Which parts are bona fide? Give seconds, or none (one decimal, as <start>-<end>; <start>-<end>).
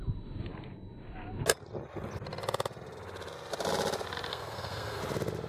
0.0-4.3; 5.0-5.5